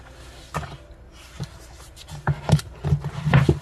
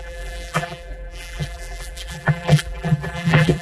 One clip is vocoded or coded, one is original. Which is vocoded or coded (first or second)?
second